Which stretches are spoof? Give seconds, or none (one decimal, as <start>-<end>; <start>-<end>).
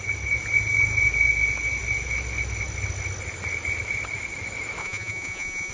4.8-5.7